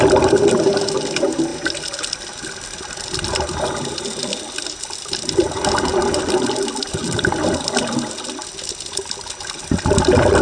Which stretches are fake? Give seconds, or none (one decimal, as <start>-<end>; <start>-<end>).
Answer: none